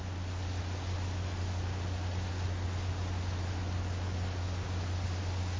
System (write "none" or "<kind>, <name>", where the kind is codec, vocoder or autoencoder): none